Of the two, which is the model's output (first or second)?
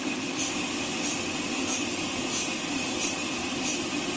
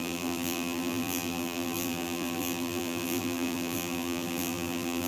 second